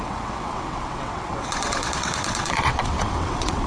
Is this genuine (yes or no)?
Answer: no